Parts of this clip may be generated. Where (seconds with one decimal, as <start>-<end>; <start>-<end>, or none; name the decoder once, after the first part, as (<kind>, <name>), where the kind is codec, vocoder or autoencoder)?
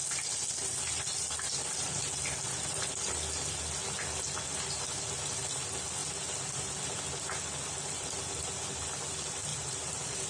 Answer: 9.5-10.3 (vocoder, BigVGAN v2)